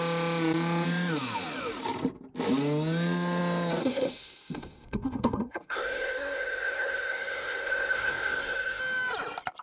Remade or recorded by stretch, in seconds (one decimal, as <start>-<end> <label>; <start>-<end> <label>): 0.0-3.8 recorded; 3.8-8.8 remade; 8.8-9.6 recorded